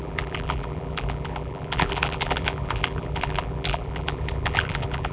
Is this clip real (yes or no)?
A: no